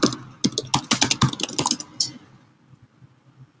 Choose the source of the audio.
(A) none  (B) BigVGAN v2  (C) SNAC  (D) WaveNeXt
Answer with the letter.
A